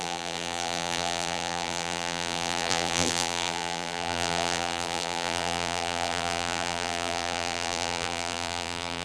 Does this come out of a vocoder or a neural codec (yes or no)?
yes